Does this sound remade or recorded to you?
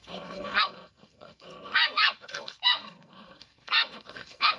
remade